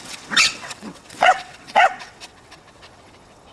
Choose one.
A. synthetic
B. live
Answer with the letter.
A